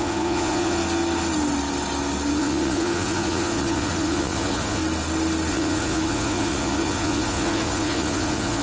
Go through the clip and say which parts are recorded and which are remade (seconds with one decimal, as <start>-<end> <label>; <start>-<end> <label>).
0.0-0.8 remade; 0.8-2.4 recorded; 2.4-4.8 remade; 4.8-5.5 recorded; 5.5-8.6 remade